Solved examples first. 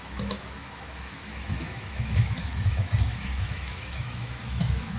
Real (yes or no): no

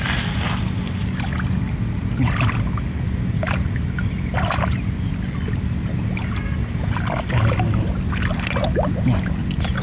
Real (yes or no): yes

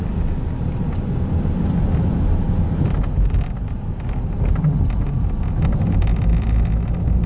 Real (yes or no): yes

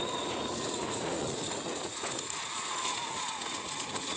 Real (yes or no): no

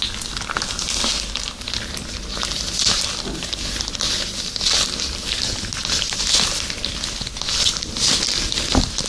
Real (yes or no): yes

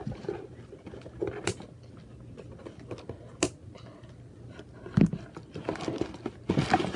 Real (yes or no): yes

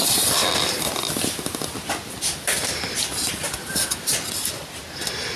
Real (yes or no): yes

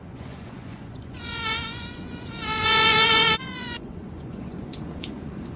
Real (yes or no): no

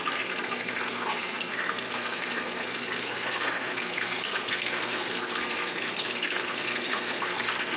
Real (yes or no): no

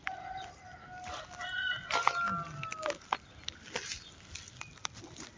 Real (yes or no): yes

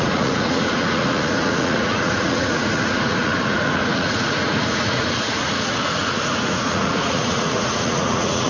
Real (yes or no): no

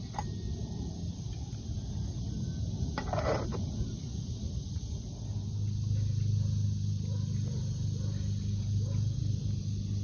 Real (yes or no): yes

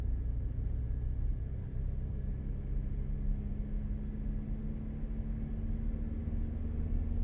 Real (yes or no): yes